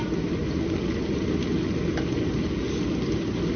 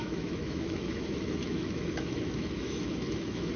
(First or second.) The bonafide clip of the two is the first